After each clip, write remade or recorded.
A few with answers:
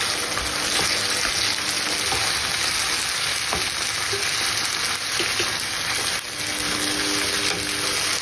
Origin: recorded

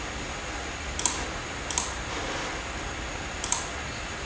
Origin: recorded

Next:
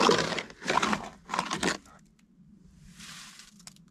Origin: recorded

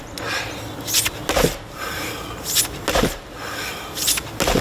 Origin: recorded